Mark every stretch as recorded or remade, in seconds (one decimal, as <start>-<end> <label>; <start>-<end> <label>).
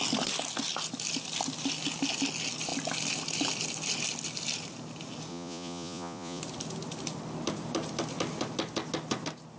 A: 0.0-5.3 recorded; 5.3-6.4 remade; 6.4-9.6 recorded